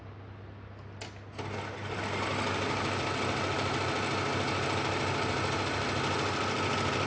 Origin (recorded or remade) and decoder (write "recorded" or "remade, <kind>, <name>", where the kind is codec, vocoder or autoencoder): recorded